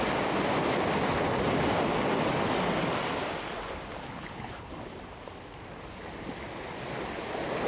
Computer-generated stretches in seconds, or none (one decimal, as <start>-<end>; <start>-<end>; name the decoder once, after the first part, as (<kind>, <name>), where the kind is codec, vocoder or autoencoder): 4.0-4.7 (codec, HILCodec)